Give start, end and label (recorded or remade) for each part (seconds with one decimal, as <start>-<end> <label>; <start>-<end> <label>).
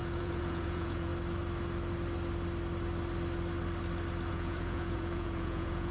0.0-1.1 remade; 1.1-4.3 recorded; 4.3-5.9 remade